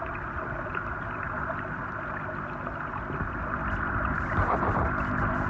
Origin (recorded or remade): recorded